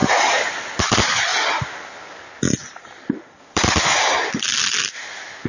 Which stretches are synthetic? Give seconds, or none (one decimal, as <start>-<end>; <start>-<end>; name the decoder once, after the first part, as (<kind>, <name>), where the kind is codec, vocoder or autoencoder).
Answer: none